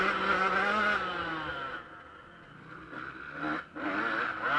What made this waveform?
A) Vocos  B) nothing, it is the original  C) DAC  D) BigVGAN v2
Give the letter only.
B